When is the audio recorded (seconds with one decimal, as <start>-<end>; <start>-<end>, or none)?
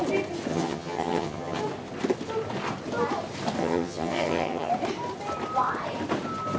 0.0-0.5; 1.6-3.6; 4.7-6.6